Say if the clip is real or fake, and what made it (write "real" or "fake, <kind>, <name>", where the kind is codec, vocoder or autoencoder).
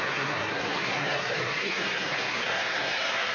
fake, codec, SNAC